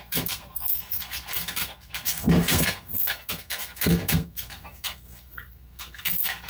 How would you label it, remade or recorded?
remade